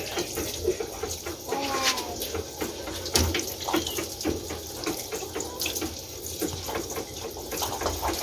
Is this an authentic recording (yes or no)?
yes